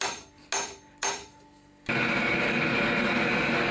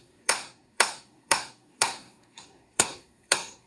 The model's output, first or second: second